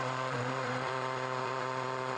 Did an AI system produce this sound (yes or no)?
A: yes